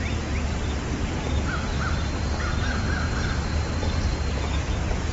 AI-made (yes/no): no